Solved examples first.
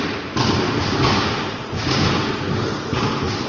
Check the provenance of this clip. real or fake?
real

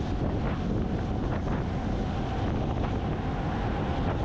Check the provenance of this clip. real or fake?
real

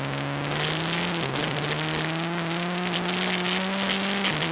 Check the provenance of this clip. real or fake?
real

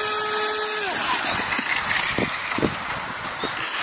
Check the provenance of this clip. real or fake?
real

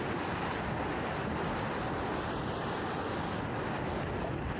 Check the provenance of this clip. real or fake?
real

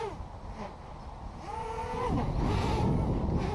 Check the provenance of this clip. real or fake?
real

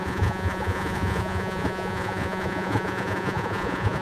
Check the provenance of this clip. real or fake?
fake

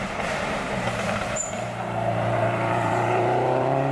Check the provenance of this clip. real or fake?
fake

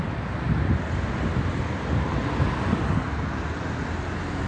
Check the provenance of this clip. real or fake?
real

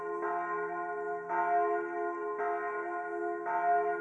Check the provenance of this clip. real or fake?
real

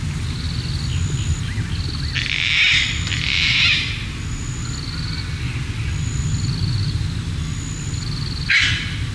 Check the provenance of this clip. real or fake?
real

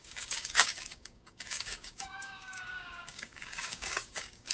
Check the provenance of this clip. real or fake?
fake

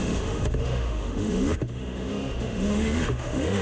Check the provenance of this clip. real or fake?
fake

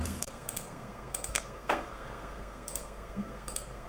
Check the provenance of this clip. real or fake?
fake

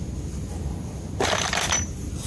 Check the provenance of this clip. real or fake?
real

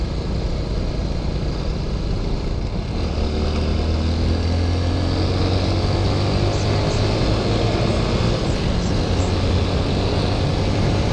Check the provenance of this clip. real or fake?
real